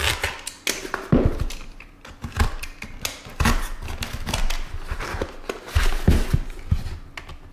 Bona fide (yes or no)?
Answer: yes